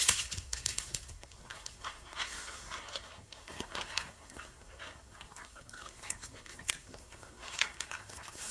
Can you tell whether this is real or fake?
fake